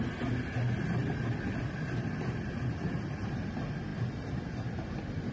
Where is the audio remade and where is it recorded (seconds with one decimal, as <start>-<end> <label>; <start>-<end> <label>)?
0.0-5.3 recorded